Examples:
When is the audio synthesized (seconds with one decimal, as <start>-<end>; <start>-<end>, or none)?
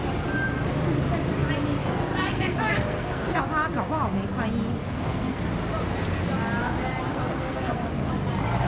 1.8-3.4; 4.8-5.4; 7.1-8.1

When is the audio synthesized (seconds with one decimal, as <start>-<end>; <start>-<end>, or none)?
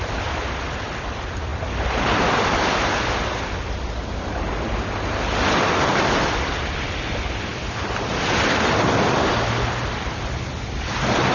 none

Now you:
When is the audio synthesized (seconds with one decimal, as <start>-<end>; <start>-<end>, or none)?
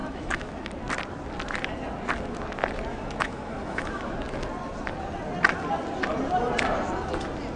0.0-0.7; 2.9-4.1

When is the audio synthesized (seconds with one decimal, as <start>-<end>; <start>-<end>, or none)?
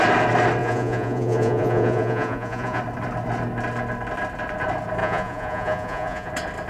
0.6-2.8; 5.0-6.3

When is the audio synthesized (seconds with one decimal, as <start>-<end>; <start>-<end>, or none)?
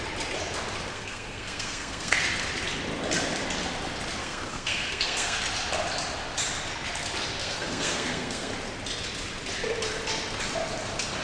0.9-2.2; 4.2-5.4; 7.4-8.5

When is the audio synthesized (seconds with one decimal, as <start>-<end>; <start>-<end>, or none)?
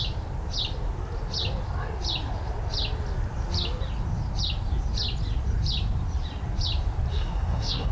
7.1-7.9